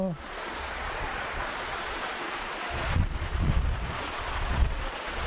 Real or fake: fake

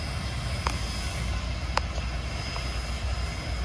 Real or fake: real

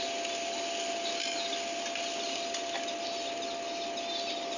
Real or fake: real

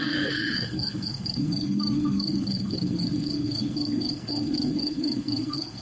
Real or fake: fake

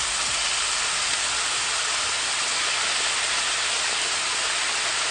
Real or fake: real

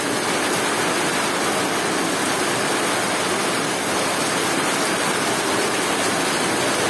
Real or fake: real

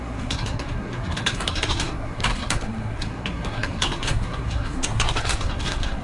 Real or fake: fake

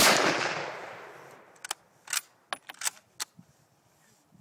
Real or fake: real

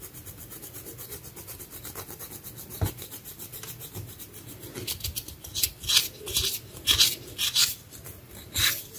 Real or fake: real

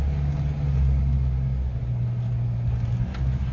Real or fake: real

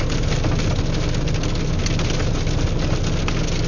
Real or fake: real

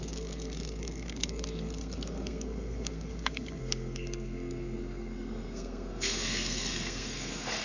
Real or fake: fake